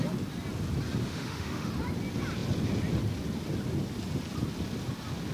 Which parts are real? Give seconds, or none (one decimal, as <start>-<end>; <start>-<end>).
0.0-1.0; 1.7-5.3

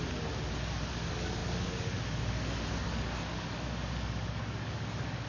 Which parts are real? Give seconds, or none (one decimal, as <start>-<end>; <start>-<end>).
0.0-0.9

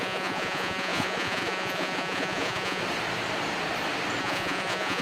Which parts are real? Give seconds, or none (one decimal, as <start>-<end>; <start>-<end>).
2.8-4.2